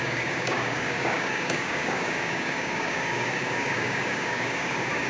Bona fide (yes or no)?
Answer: no